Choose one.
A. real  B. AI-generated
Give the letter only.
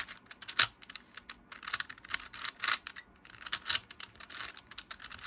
A